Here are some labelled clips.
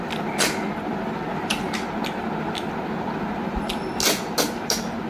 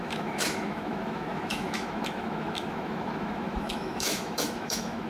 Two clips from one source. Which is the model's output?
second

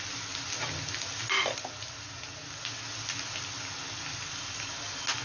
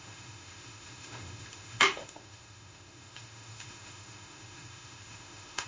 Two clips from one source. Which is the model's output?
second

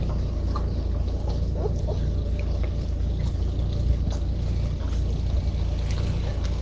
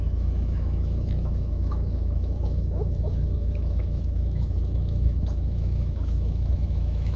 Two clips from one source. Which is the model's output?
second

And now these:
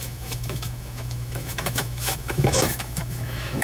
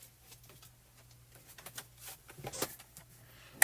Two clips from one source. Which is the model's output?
first